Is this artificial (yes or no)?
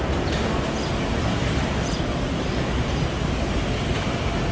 no